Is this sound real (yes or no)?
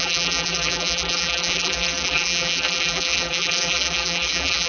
no